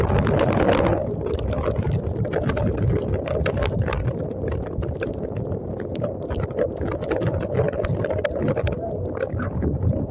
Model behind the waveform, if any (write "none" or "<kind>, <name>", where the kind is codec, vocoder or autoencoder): none